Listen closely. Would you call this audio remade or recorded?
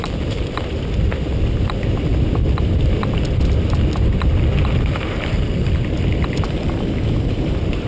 remade